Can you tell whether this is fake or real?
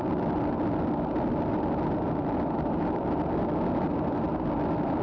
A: real